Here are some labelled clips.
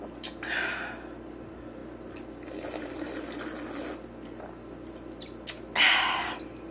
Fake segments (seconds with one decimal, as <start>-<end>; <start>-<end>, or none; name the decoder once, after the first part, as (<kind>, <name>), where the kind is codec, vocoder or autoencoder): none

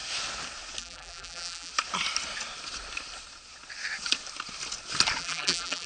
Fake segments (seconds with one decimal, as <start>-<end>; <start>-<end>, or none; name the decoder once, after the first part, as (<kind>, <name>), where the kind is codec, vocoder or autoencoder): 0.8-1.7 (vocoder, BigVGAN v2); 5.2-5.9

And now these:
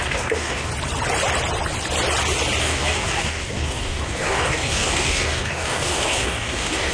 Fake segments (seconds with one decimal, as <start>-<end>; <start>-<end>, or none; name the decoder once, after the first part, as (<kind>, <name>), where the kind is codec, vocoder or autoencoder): 0.0-0.7 (codec, DAC); 2.6-6.9

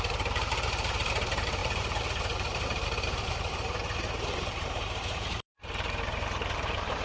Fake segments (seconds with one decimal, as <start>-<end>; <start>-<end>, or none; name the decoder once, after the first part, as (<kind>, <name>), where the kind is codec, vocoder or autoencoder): 0.0-3.8 (vocoder, BigVGAN v2); 4.4-7.0

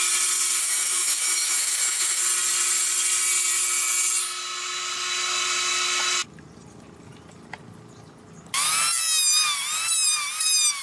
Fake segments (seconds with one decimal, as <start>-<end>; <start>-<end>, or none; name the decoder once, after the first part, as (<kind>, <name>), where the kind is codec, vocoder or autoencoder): 0.6-2.2 (autoencoder, DAC-VAE)

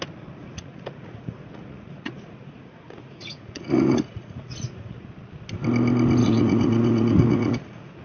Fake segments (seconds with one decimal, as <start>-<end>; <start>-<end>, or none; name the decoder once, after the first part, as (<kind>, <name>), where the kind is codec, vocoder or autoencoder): 0.4-5.1 (vocoder, Vocos); 6.2-8.0